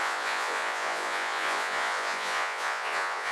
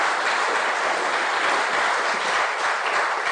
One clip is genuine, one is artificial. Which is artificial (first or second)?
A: first